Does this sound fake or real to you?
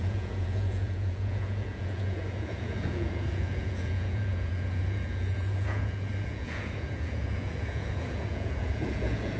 fake